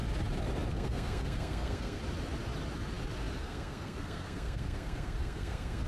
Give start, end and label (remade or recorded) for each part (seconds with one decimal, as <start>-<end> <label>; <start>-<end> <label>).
0.0-0.7 recorded; 0.7-2.0 remade; 2.0-3.4 recorded; 3.4-5.9 remade